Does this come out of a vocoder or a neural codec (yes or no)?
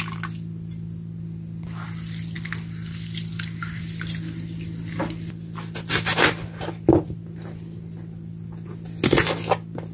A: no